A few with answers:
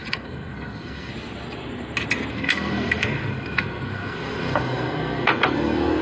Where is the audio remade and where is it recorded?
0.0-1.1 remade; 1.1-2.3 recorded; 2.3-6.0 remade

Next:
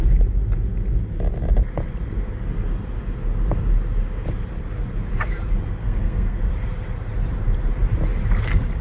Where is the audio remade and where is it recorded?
0.0-5.8 recorded; 5.8-6.4 remade; 6.4-8.8 recorded

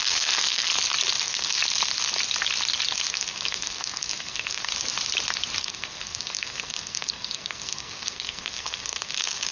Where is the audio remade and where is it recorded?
0.0-0.7 remade; 0.7-1.2 recorded; 1.2-1.6 remade; 1.6-3.1 recorded; 3.1-4.7 remade; 4.7-5.6 recorded; 5.6-9.5 remade

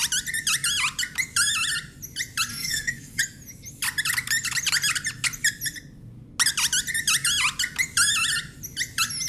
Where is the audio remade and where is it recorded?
0.0-2.5 recorded; 2.5-3.2 remade; 3.2-9.3 recorded

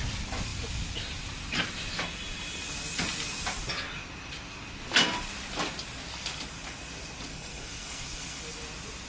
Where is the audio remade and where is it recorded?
0.0-7.3 recorded; 7.3-8.4 remade; 8.4-9.1 recorded

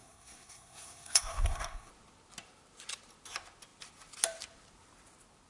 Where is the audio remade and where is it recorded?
0.0-1.9 remade; 1.9-5.5 recorded

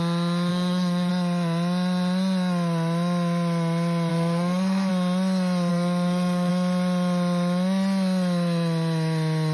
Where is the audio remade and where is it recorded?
0.0-0.5 recorded; 0.5-1.1 remade; 1.1-4.1 recorded; 4.1-4.9 remade; 4.9-5.7 recorded; 5.7-6.5 remade; 6.5-9.5 recorded

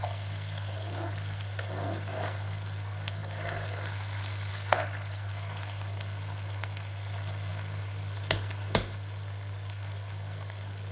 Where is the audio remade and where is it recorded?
0.0-10.9 remade